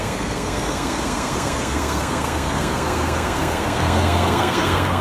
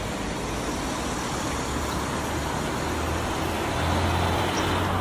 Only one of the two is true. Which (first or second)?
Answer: second